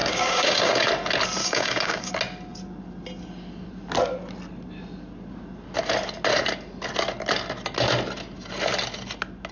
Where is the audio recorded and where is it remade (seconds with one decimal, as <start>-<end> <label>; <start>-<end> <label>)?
0.0-0.9 remade; 0.9-1.4 recorded; 1.4-2.1 remade; 2.1-9.5 recorded